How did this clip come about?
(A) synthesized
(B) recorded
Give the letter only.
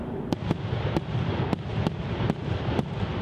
B